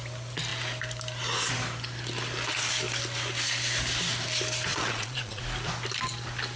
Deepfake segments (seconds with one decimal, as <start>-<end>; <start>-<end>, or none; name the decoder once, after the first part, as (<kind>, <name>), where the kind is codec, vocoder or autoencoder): 4.7-5.4 (vocoder, Vocos)